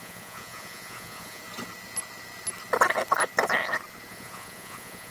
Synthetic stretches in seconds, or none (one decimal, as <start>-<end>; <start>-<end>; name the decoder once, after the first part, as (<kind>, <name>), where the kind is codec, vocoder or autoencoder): 0.0-1.4 (vocoder, Vocos); 4.1-5.1

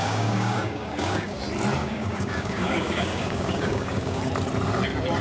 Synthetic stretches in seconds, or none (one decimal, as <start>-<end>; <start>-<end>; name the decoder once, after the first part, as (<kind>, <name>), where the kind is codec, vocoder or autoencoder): 0.0-1.4 (codec, DAC); 1.8-4.3